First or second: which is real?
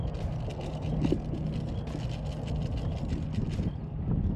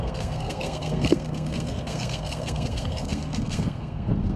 first